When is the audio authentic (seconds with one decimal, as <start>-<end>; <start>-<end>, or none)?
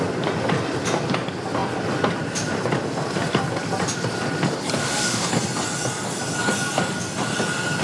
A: 0.0-4.8; 5.3-7.8